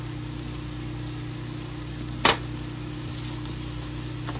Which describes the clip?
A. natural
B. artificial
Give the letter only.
A